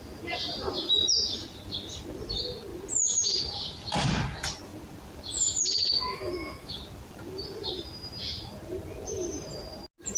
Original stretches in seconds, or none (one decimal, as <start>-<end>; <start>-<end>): 0.0-6.1; 6.8-10.2